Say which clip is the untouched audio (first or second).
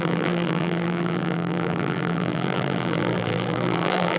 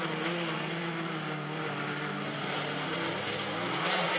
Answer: second